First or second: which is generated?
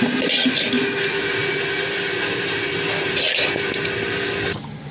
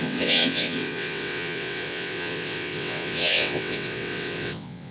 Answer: second